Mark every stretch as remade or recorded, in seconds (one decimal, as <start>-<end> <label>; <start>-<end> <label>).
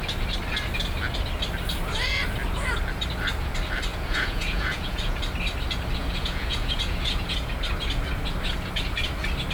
0.0-3.9 recorded; 3.9-5.2 remade; 5.2-6.0 recorded; 6.0-7.5 remade; 7.5-9.5 recorded